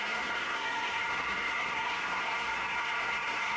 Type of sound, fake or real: fake